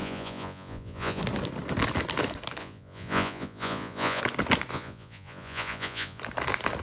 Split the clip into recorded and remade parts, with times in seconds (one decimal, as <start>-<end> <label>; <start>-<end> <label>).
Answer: 0.0-1.2 remade; 1.2-2.6 recorded; 2.6-4.2 remade; 4.2-4.7 recorded; 4.7-6.2 remade; 6.2-6.8 recorded

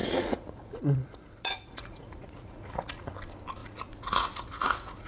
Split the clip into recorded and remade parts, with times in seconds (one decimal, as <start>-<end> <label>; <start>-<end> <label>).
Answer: 0.0-3.1 remade; 3.1-3.6 recorded; 3.6-5.1 remade

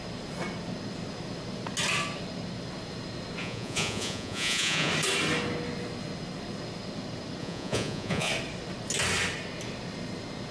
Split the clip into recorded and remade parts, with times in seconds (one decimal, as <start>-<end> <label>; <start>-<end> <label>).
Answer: 0.0-3.4 recorded; 3.4-4.9 remade; 4.9-7.4 recorded; 7.4-8.3 remade; 8.3-10.5 recorded

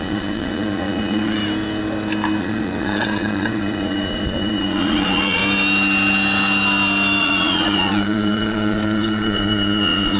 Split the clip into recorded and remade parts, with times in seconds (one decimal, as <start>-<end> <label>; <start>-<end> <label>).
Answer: 0.0-1.4 remade; 1.4-2.4 recorded; 2.4-5.4 remade; 5.4-7.2 recorded; 7.2-10.2 remade

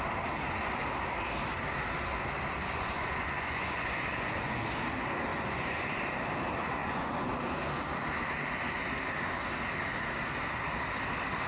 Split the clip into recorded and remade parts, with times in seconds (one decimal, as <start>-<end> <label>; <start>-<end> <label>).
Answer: 0.0-2.6 recorded; 2.6-4.6 remade; 4.6-5.3 recorded; 5.3-6.0 remade; 6.0-6.8 recorded; 6.8-7.3 remade; 7.3-11.5 recorded

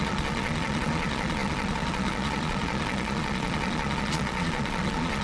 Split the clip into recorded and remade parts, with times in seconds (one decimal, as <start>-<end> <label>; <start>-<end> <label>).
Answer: 0.0-5.2 remade

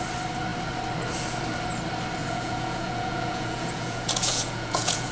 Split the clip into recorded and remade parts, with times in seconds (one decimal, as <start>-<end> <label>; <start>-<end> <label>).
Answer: 0.0-2.2 recorded; 2.2-5.1 remade